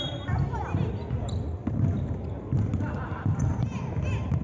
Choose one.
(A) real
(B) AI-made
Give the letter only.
A